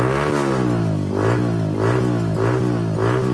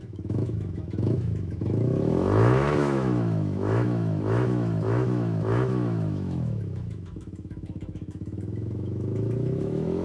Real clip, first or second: first